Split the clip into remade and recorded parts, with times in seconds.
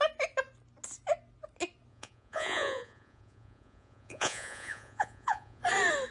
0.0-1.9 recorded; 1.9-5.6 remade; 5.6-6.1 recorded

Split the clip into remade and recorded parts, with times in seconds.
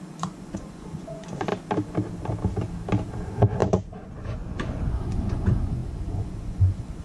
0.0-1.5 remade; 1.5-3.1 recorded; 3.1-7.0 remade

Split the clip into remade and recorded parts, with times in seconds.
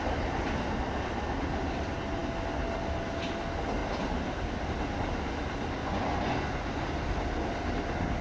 0.0-5.8 recorded; 5.8-6.8 remade; 6.8-8.2 recorded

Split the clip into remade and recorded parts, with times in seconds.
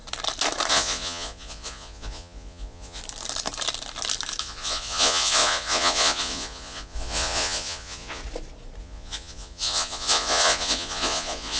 0.0-0.7 recorded; 0.7-3.0 remade; 3.0-4.4 recorded; 4.4-8.2 remade; 8.2-8.8 recorded; 8.8-11.6 remade